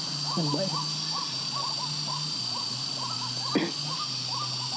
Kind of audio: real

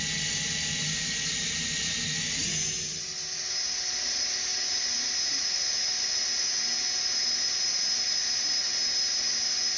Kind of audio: real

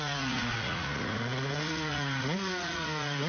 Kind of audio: fake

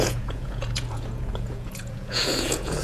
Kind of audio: fake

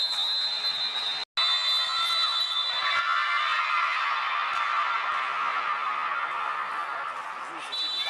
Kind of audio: real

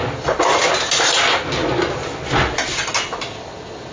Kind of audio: real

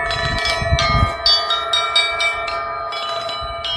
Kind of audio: real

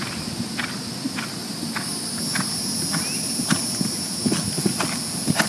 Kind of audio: real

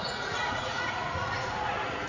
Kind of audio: fake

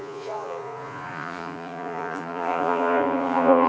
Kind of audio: fake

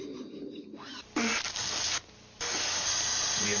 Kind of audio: real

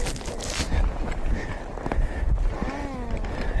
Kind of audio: real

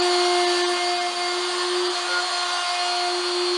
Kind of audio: real